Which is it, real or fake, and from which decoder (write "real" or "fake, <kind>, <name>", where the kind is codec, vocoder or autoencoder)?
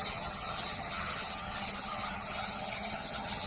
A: fake, vocoder, HiFi-GAN